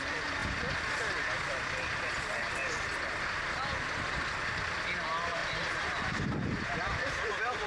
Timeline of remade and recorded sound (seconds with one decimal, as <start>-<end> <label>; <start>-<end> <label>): 0.0-5.4 recorded; 5.4-6.2 remade; 6.2-7.7 recorded